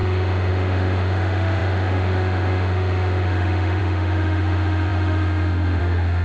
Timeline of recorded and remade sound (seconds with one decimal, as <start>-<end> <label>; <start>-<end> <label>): 0.0-6.2 remade